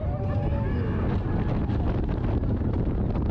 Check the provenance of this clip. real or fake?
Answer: real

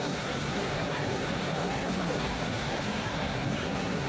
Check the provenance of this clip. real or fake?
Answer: fake